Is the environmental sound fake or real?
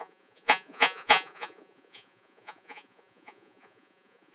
fake